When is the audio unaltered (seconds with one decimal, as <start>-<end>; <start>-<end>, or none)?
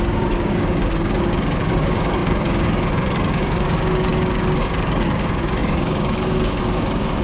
none